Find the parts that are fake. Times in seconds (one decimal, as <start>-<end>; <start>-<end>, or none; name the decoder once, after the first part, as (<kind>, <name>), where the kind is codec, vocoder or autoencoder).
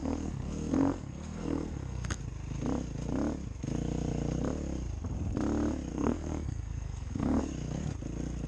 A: 0.0-2.2 (codec, SNAC); 5.9-7.4